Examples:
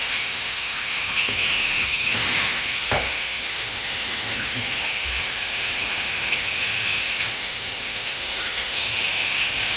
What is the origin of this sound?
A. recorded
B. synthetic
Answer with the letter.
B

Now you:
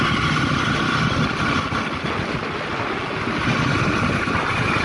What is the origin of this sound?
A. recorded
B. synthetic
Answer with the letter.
A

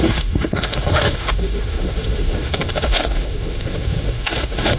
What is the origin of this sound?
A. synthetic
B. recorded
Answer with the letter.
A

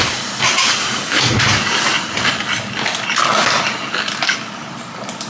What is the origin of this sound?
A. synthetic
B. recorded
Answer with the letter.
B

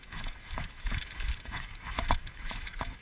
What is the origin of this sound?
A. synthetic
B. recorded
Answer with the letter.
A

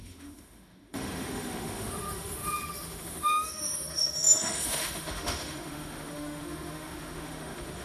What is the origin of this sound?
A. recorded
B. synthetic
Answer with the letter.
B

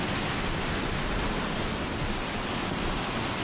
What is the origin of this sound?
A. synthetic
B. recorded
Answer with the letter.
B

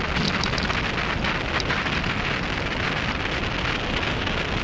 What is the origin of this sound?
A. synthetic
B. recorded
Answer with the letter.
B